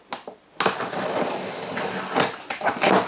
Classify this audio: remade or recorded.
recorded